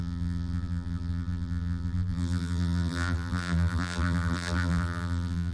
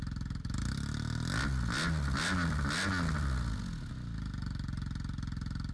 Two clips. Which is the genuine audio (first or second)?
second